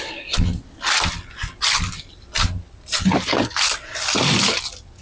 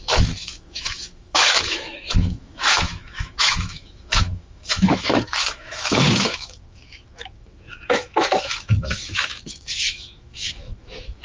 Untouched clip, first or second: first